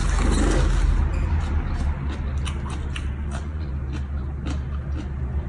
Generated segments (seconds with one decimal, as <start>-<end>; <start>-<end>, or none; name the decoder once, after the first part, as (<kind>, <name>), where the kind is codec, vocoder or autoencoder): 3.2-3.7 (vocoder, Vocos)